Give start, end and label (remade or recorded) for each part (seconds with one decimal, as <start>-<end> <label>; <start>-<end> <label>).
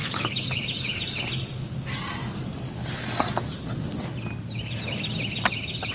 0.0-1.2 remade; 1.2-5.9 recorded